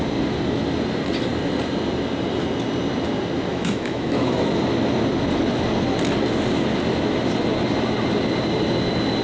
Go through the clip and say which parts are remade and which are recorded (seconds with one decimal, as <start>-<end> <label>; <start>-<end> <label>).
0.0-3.5 recorded; 3.5-4.5 remade; 4.5-9.2 recorded